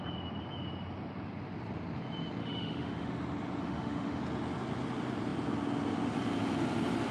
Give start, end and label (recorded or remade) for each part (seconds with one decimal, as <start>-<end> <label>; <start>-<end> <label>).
0.0-2.4 recorded; 2.4-3.1 remade; 3.1-3.6 recorded; 3.6-4.2 remade; 4.2-7.1 recorded